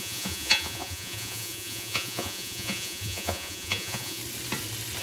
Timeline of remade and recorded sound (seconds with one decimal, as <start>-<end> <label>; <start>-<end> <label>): 0.0-4.2 remade; 4.2-5.0 recorded